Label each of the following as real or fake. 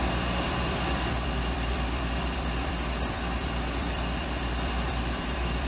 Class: fake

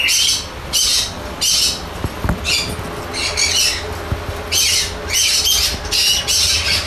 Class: real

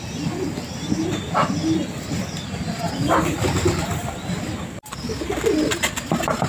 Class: fake